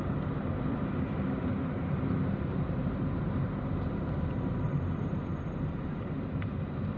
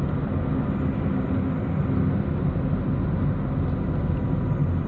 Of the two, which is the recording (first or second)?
second